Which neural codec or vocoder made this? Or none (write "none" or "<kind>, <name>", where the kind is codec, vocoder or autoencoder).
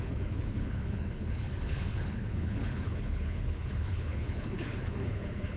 codec, HILCodec